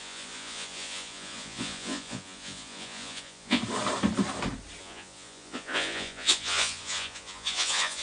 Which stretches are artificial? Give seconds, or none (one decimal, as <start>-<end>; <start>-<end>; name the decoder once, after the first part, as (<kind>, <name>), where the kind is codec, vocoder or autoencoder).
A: 0.0-3.6 (vocoder, Vocos); 4.8-8.0